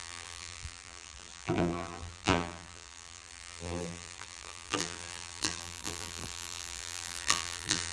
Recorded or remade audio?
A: remade